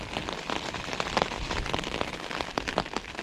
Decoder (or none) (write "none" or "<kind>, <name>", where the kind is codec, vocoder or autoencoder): none